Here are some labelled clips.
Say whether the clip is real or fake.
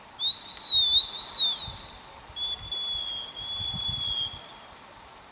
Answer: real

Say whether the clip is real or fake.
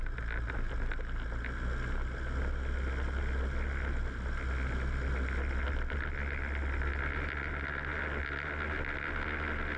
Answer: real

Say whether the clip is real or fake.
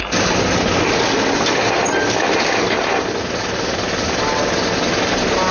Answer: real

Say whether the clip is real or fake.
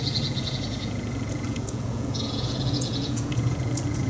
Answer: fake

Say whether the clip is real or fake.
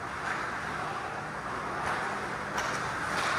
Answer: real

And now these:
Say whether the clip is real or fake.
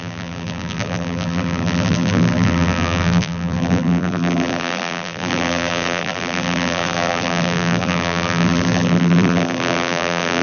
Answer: fake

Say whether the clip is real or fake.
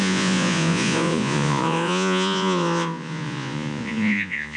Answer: fake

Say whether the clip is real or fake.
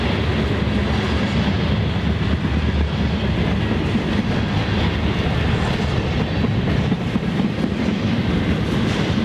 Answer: real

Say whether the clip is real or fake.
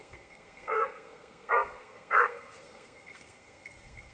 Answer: fake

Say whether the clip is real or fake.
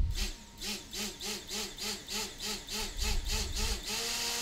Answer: real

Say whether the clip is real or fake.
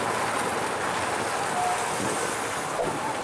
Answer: real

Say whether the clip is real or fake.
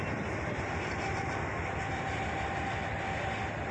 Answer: real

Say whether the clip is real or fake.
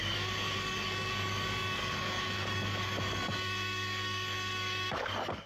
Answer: fake